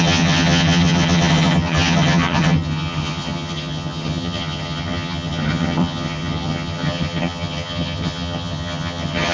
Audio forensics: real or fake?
fake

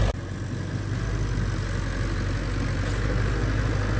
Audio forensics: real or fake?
real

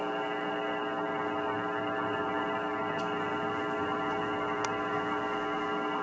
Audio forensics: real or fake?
real